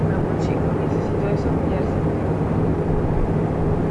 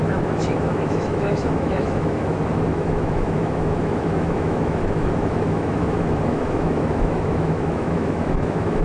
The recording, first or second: first